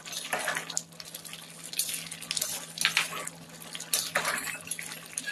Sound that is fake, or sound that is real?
real